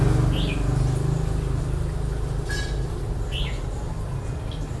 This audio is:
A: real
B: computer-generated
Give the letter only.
A